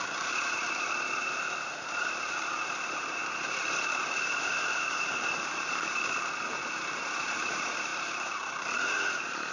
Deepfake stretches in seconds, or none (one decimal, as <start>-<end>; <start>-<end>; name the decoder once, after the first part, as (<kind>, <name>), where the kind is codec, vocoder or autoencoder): 0.0-9.5 (vocoder, BigVGAN v2)